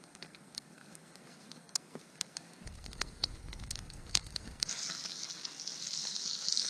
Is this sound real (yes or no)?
no